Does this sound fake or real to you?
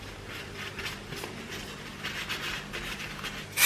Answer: real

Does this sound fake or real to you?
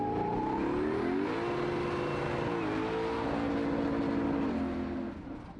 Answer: real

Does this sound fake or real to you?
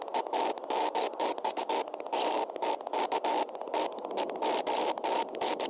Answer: real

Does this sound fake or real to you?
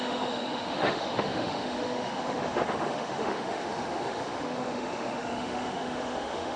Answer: fake